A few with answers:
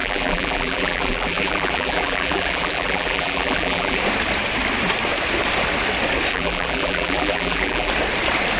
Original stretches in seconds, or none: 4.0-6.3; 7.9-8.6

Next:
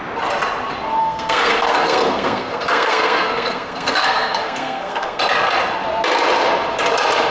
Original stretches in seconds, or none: 0.0-1.0; 5.2-7.3

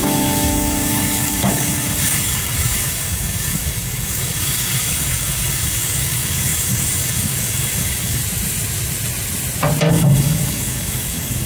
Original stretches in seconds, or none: 8.2-9.9

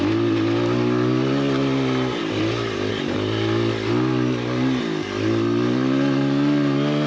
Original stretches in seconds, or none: 0.0-7.1